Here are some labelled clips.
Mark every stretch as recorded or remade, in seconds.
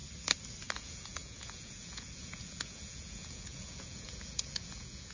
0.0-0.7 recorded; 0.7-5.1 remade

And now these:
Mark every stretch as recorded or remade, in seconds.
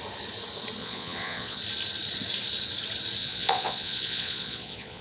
0.0-0.8 recorded; 0.8-1.6 remade; 1.6-3.2 recorded; 3.2-5.0 remade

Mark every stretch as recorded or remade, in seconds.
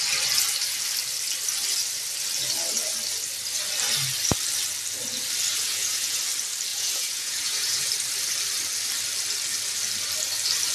0.0-5.5 recorded; 5.5-6.2 remade; 6.2-6.7 recorded; 6.7-7.9 remade; 7.9-10.7 recorded